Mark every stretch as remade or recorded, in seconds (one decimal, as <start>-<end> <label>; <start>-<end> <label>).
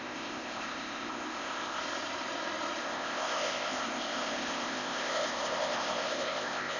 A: 0.0-1.8 remade; 1.8-2.8 recorded; 2.8-6.8 remade